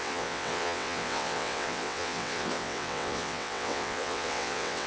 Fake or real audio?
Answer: fake